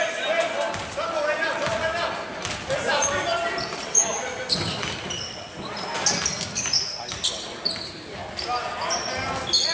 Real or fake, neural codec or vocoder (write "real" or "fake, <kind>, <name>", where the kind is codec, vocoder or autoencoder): real